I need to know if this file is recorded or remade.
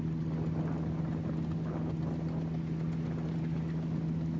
recorded